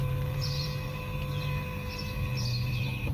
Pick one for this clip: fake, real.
fake